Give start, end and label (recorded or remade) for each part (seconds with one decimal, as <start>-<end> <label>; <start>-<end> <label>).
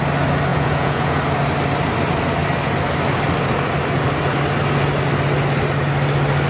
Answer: 0.0-0.5 recorded; 0.5-1.2 remade; 1.2-6.5 recorded